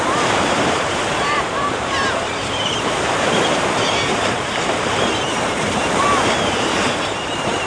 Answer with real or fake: fake